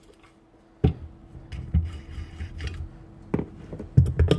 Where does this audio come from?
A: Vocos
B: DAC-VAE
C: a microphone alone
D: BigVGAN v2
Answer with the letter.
C